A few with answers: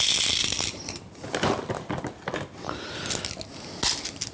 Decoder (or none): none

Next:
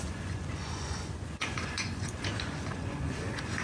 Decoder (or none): vocoder, Vocos